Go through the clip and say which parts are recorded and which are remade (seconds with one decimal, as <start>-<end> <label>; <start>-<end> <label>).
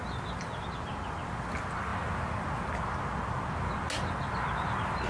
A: 0.0-5.1 recorded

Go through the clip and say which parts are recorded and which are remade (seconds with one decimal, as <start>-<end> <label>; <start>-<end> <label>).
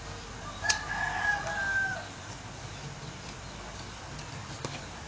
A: 0.0-5.1 recorded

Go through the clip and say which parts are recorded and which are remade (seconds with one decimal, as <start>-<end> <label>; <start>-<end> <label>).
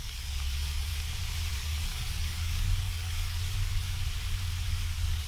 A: 0.0-0.9 remade; 0.9-1.5 recorded; 1.5-4.0 remade; 4.0-4.7 recorded; 4.7-5.3 remade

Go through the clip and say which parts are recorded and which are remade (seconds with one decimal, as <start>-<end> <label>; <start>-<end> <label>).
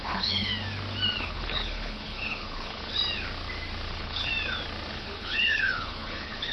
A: 0.0-0.5 remade; 0.5-1.2 recorded; 1.2-2.9 remade; 2.9-3.9 recorded; 3.9-4.3 remade; 4.3-4.9 recorded; 4.9-6.5 remade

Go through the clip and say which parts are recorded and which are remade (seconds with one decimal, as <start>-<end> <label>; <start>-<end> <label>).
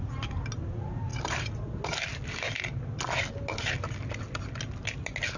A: 0.0-5.4 recorded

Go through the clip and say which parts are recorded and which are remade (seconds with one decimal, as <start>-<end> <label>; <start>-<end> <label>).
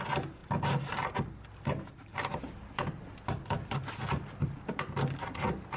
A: 0.0-5.8 recorded